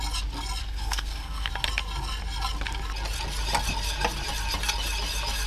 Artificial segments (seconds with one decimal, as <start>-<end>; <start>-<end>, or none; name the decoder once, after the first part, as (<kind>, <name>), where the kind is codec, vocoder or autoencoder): 0.6-1.5 (codec, SNAC)